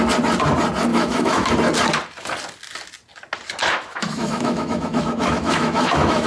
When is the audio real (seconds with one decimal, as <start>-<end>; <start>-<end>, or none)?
0.0-0.9; 1.5-3.6